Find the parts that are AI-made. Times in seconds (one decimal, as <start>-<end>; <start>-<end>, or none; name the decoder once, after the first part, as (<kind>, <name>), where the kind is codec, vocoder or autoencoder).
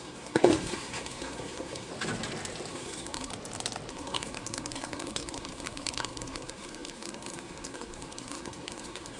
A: 0.0-1.9 (codec, SNAC); 2.7-3.3; 3.9-9.2